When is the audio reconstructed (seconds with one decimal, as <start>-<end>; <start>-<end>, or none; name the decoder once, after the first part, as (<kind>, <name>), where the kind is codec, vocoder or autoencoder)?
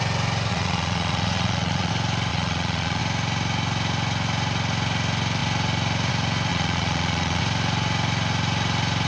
0.5-1.9 (vocoder, Vocos); 2.3-3.0; 6.5-7.4